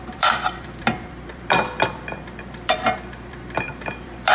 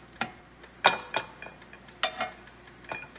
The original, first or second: second